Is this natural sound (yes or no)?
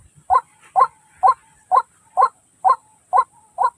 yes